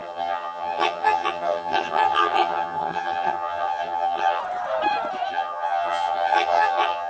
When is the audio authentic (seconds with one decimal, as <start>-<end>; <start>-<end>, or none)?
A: 4.4-5.3